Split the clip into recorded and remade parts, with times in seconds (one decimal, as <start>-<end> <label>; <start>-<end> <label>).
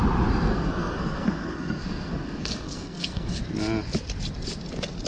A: 0.0-0.5 recorded; 0.5-3.4 remade; 3.4-5.1 recorded